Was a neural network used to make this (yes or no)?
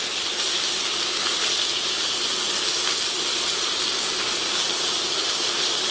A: no